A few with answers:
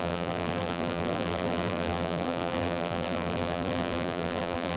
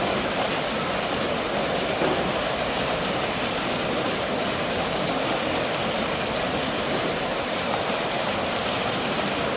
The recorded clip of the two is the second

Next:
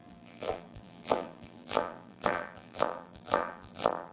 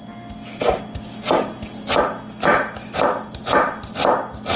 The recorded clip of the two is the second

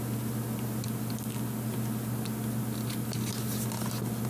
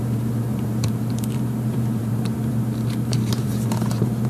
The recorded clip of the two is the first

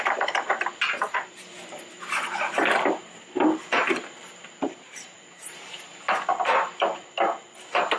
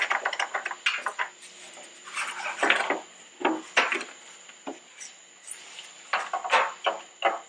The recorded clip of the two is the second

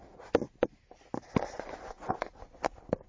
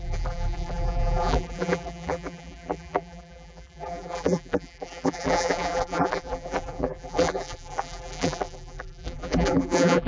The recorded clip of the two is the first